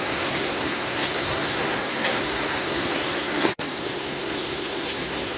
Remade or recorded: remade